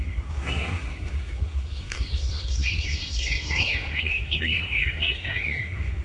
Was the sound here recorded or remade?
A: remade